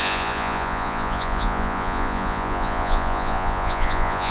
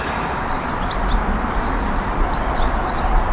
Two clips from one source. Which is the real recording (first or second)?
second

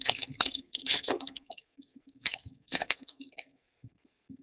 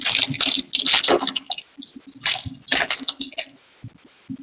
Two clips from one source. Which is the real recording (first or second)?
second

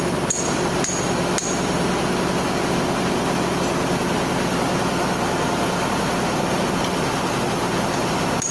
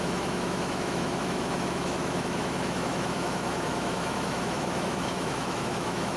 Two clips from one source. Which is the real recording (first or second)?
first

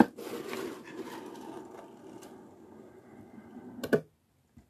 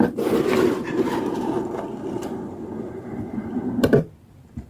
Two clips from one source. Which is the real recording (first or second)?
first